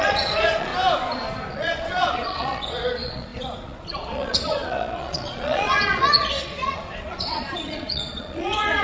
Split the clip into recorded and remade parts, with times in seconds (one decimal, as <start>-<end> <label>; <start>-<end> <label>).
0.0-0.7 remade; 0.7-1.5 recorded; 1.5-8.8 remade